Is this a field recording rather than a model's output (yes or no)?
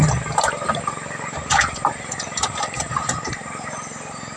yes